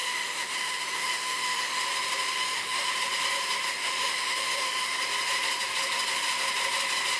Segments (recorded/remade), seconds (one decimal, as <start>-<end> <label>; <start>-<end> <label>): 0.0-1.8 remade; 1.8-2.3 recorded; 2.3-2.9 remade; 2.9-3.8 recorded; 3.8-5.0 remade; 5.0-7.2 recorded

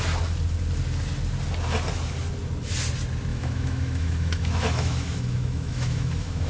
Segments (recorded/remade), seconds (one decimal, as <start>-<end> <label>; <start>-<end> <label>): 0.0-3.3 recorded; 3.3-6.5 remade

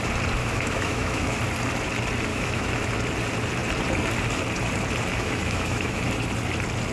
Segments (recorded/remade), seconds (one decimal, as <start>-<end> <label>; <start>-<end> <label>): 0.0-0.4 recorded; 0.4-1.4 remade; 1.4-2.3 recorded; 2.3-2.9 remade; 2.9-5.1 recorded; 5.1-6.0 remade; 6.0-6.9 recorded

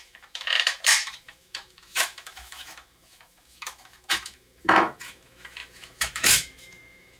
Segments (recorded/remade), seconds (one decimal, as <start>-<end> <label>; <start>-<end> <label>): 0.0-7.2 remade

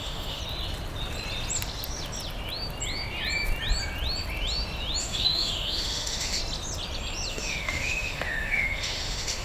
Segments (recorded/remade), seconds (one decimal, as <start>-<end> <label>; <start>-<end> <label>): 0.0-0.4 remade; 0.4-5.0 recorded; 5.0-6.4 remade; 6.4-7.3 recorded; 7.3-9.4 remade

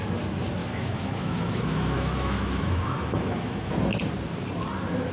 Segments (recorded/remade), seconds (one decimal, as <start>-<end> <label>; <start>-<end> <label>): 0.0-0.6 recorded; 0.6-3.7 remade; 3.7-5.1 recorded

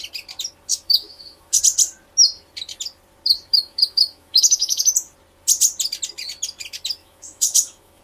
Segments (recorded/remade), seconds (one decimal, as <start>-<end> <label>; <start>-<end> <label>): 0.0-0.7 recorded; 0.7-1.6 remade; 1.6-3.5 recorded; 3.5-4.8 remade; 4.8-7.0 recorded; 7.0-8.0 remade

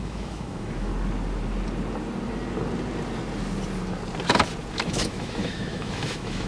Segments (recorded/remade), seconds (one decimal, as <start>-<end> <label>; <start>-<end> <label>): 0.0-0.9 remade; 0.9-4.7 recorded; 4.7-6.5 remade